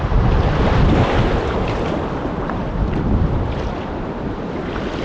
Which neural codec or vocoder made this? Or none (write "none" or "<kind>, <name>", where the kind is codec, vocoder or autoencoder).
vocoder, BigVGAN v2